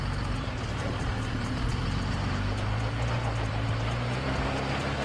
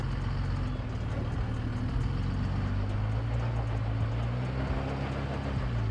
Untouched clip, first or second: second